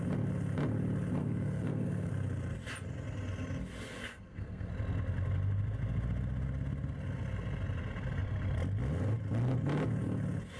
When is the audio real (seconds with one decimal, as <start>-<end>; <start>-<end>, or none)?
0.0-1.2; 2.1-4.0; 4.7-10.6